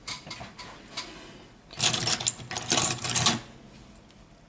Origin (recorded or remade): recorded